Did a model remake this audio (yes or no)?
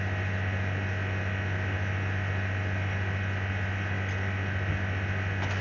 no